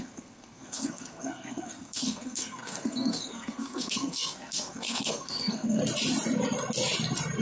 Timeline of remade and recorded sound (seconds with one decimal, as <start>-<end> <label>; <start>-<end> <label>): 0.0-5.8 remade; 5.8-7.4 recorded